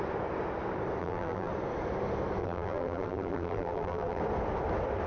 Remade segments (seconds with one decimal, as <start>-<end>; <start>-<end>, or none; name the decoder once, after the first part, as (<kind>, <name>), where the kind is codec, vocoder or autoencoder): 1.0-1.5 (vocoder, BigVGAN v2); 2.4-4.2